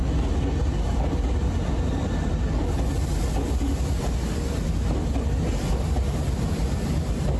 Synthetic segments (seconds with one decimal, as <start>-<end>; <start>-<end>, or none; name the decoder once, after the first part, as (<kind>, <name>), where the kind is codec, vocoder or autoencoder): none